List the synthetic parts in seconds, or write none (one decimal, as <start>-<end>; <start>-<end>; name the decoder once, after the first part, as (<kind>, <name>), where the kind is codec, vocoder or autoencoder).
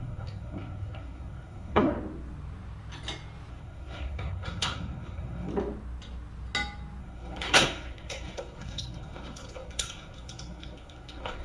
0.0-1.9 (codec, SNAC); 3.5-5.5; 7.0-11.4